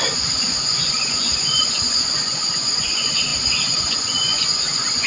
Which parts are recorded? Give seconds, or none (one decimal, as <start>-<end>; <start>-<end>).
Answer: none